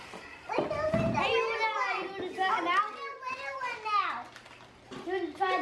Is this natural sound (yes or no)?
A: yes